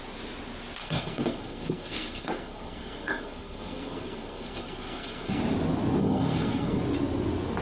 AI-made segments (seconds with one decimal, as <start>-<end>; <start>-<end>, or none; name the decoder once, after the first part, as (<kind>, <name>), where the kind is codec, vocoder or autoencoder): 0.8-5.4 (codec, SNAC); 6.0-6.8